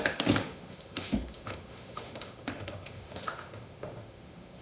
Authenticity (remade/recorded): remade